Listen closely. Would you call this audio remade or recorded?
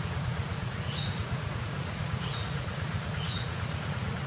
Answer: remade